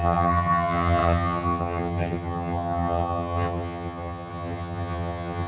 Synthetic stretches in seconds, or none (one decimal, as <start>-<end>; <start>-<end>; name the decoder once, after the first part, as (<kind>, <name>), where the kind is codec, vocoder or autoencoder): 0.0-5.5 (vocoder, HiFi-GAN)